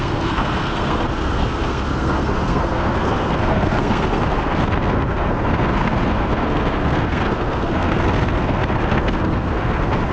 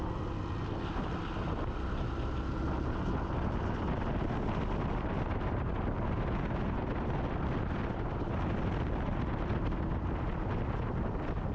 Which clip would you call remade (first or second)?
first